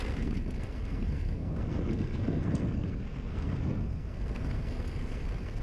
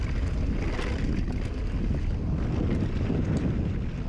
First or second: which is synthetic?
first